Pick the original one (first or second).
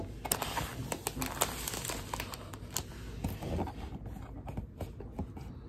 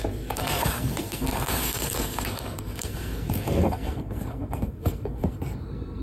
first